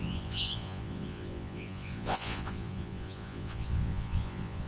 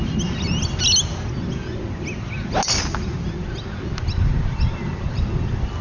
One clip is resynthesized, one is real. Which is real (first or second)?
second